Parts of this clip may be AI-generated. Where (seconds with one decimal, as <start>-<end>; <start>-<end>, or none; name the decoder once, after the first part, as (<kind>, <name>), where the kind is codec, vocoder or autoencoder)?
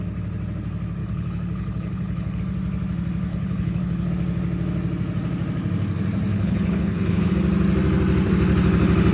1.0-2.4 (codec, HILCodec); 3.3-4.1; 6.3-7.3